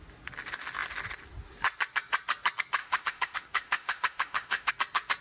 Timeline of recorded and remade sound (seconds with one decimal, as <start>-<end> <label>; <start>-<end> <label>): 0.0-2.8 recorded; 2.8-4.7 remade; 4.7-5.2 recorded